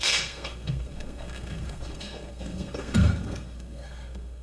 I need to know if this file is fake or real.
fake